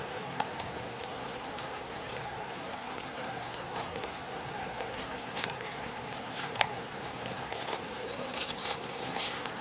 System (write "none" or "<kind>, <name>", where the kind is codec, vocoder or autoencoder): codec, SNAC